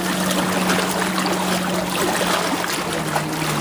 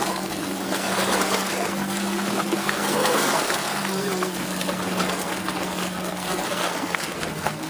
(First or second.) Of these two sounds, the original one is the first